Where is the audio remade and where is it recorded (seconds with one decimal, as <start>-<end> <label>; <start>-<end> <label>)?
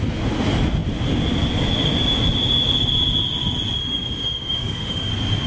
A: 0.0-3.8 recorded; 3.8-5.1 remade; 5.1-5.5 recorded